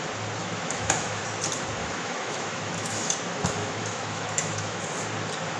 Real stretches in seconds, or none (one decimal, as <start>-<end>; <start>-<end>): 0.0-0.4; 1.2-1.8; 3.1-3.6; 4.8-5.6